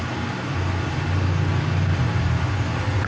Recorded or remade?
recorded